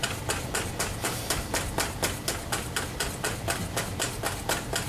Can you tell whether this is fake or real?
real